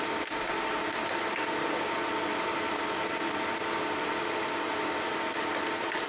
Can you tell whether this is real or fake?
fake